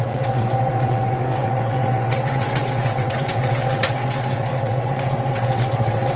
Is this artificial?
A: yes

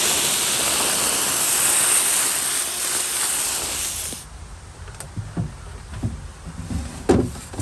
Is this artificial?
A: no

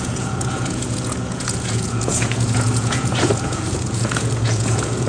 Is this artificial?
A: yes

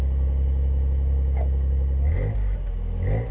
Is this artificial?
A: no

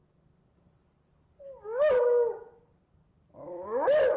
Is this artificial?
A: no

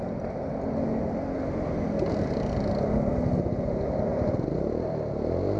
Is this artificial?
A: no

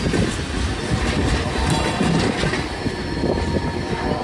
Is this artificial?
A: no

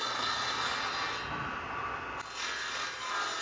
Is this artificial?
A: no